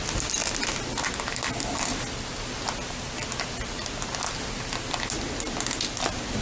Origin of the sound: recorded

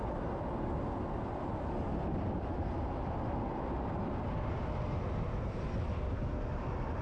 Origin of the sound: recorded